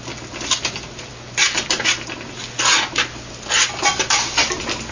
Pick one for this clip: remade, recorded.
recorded